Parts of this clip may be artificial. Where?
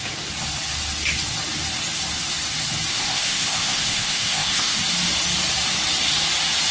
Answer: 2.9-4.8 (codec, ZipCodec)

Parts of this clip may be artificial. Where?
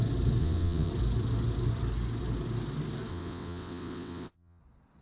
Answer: 0.4-0.9 (vocoder, WaveNeXt); 3.1-4.6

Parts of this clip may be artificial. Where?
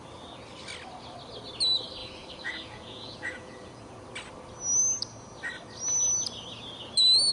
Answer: 2.0-3.9 (vocoder, Vocos)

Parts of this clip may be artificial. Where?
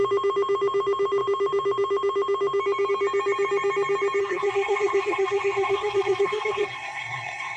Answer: 4.2-7.6 (codec, SNAC)